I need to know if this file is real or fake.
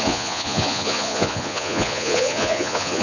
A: fake